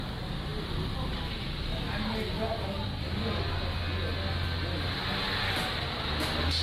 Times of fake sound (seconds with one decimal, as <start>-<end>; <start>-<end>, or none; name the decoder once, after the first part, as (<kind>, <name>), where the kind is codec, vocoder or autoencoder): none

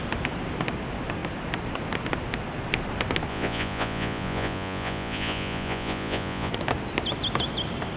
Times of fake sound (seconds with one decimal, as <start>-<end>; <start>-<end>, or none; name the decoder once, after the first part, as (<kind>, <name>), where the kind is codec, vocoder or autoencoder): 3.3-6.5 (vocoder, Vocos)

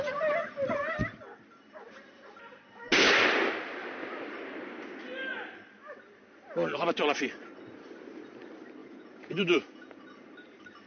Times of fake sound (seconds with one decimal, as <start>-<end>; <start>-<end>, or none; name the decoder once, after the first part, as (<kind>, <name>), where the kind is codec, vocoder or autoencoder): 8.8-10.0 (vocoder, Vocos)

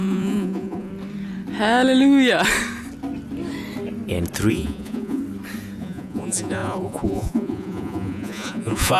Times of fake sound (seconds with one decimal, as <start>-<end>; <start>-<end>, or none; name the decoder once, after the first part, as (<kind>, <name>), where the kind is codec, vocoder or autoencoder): 0.0-0.9 (vocoder, Vocos); 4.5-5.2; 5.8-9.0

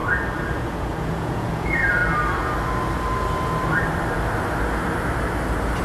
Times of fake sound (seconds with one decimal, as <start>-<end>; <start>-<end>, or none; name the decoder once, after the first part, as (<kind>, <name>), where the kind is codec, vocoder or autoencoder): 0.6-2.0 (vocoder, Vocos)

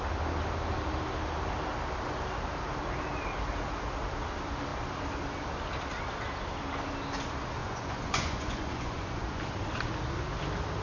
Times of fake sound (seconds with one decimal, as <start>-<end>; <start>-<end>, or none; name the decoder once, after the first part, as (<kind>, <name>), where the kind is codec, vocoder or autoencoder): 7.6-9.4 (vocoder, Vocos)

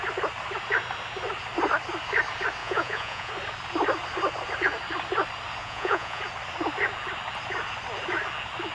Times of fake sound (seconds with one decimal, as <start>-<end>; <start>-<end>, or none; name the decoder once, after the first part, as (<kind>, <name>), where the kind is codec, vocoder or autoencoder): 2.6-3.3 (vocoder, Vocos); 5.6-6.2

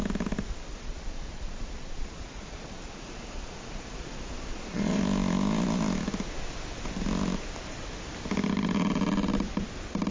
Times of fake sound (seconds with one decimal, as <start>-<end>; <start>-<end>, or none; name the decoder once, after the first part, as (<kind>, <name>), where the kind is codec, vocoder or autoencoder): 0.7-5.0 (vocoder, Vocos)